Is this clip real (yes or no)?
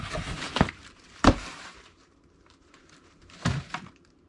no